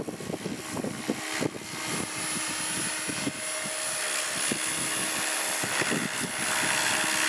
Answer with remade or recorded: recorded